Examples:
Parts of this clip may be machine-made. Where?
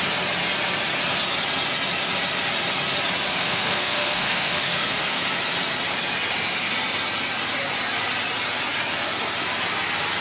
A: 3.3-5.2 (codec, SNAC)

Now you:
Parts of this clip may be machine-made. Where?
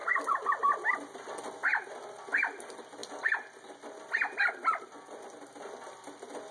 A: none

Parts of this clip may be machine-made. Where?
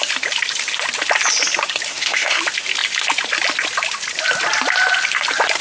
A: 1.9-2.4 (codec, SNAC)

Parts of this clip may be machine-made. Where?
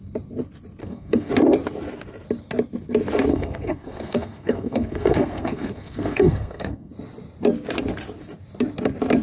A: 0.8-1.3 (codec, SNAC); 3.3-6.9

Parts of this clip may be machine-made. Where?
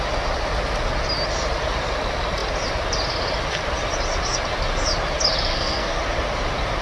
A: 5.5-6.0 (codec, SNAC)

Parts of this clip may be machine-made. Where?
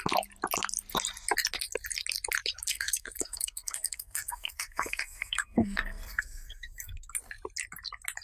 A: 2.7-7.1 (codec, SNAC)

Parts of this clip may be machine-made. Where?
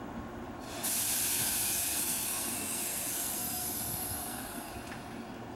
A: 1.3-4.7 (codec, SNAC)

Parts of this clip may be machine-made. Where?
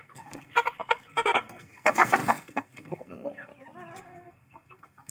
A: 0.0-3.5 (codec, SNAC); 4.0-5.1